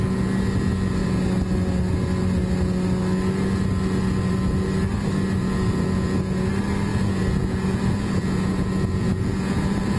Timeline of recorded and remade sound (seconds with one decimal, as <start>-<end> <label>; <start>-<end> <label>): 0.0-5.4 recorded; 5.4-6.5 remade; 6.5-6.9 recorded; 6.9-10.0 remade

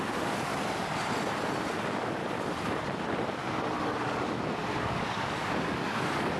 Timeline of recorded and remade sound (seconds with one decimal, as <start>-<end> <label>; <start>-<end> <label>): 0.0-0.5 remade; 0.5-1.8 recorded; 1.8-2.2 remade; 2.2-4.8 recorded; 4.8-6.4 remade

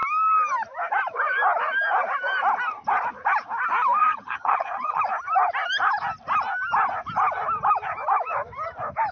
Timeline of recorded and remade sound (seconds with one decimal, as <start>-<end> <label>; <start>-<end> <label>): 0.0-4.0 recorded; 4.0-5.0 remade; 5.0-9.1 recorded

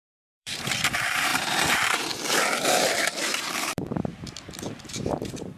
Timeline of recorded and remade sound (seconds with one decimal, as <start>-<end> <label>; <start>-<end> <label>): 0.0-5.6 remade

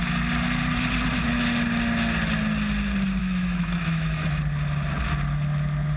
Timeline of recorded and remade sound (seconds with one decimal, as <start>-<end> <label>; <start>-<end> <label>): 0.0-3.2 recorded; 3.2-4.4 remade; 4.4-6.0 recorded

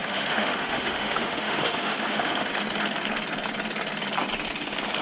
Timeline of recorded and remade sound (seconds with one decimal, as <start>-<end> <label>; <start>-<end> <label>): 0.0-2.5 remade; 2.5-5.0 recorded

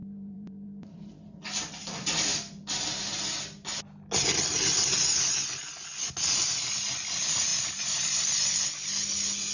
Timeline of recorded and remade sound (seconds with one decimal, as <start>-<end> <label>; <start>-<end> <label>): 0.0-2.9 remade; 2.9-7.5 recorded; 7.5-8.5 remade; 8.5-9.5 recorded

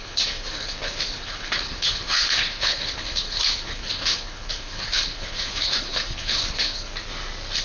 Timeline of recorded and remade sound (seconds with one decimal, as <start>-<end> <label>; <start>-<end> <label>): 0.0-6.9 remade; 6.9-7.6 recorded